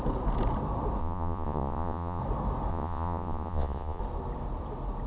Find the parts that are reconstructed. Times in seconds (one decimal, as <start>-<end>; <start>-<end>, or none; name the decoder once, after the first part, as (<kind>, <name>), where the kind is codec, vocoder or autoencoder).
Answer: 1.0-2.2 (vocoder, Vocos); 2.7-4.0

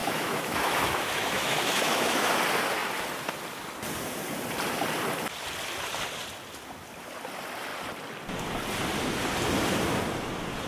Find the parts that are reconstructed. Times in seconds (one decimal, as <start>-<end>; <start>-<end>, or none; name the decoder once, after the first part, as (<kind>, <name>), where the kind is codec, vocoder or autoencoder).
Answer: 0.0-2.3 (autoencoder, DAC-VAE)

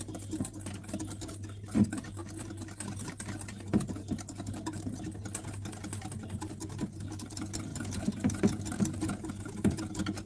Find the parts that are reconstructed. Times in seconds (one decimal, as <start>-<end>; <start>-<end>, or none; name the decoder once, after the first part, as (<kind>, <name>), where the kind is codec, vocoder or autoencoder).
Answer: none

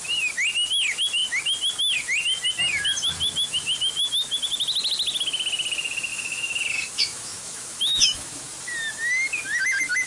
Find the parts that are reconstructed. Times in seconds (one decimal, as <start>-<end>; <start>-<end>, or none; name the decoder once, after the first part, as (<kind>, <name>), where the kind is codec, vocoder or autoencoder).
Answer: 6.1-8.4 (autoencoder, DAC-VAE)

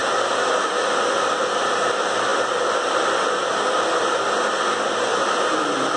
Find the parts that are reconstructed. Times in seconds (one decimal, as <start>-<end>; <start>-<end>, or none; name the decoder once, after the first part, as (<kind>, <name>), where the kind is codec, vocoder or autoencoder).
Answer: none

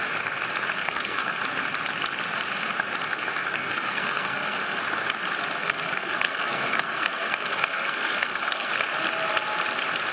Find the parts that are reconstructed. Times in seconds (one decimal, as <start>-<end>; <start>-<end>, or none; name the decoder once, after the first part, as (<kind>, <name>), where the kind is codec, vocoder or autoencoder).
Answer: 0.8-1.4 (codec, SNAC); 3.4-4.8; 5.6-8.7